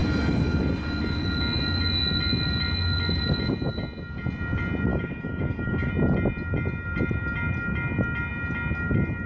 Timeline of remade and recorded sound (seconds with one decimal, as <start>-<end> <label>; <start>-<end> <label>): 0.0-4.9 recorded; 4.9-5.9 remade; 5.9-9.3 recorded